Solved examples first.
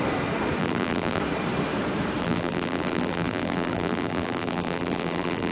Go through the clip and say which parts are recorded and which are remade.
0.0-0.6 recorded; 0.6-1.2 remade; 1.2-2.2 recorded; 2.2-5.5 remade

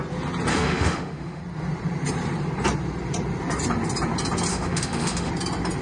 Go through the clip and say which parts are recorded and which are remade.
0.0-0.5 recorded; 0.5-1.4 remade; 1.4-4.5 recorded; 4.5-5.3 remade; 5.3-5.8 recorded